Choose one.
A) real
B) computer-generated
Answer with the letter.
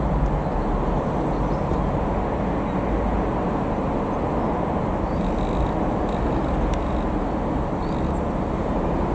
A